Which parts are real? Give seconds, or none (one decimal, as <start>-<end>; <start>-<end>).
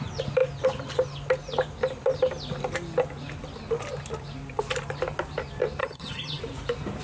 0.0-5.8; 6.4-7.0